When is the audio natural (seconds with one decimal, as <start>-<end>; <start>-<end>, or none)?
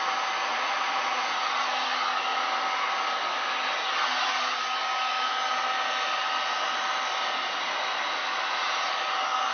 0.0-0.5; 1.5-8.2; 9.0-9.5